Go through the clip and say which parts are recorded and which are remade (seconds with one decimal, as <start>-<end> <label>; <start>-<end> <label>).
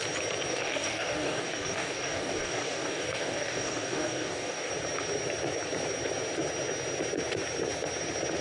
0.0-0.5 recorded; 0.5-4.7 remade; 4.7-8.4 recorded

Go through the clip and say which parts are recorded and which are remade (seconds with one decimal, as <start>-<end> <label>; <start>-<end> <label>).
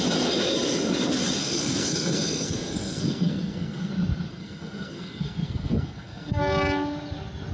0.0-1.4 recorded; 1.4-3.9 remade; 3.9-4.3 recorded; 4.3-6.4 remade; 6.4-7.5 recorded